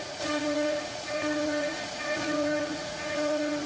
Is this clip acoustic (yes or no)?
no